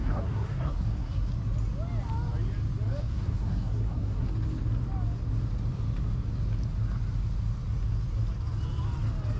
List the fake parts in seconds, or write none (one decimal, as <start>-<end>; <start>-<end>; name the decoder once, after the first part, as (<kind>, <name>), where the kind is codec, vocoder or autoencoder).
0.0-1.3 (codec, SNAC); 3.0-4.3